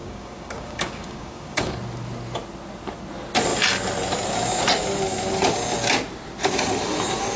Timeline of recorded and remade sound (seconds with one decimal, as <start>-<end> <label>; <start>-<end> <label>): 0.0-1.7 remade; 1.7-7.4 recorded